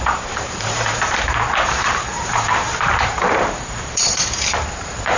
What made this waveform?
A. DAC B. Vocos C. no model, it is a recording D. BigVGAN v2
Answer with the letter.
D